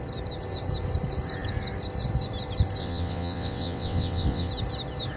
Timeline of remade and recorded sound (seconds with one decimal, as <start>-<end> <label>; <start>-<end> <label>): 0.0-2.8 recorded; 2.8-4.5 remade; 4.5-5.2 recorded